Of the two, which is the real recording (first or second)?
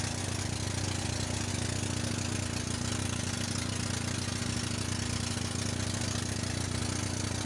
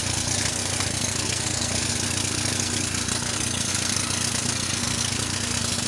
first